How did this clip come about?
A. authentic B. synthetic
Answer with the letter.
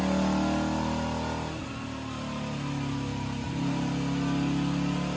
A